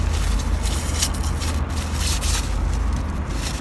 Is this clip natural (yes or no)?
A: yes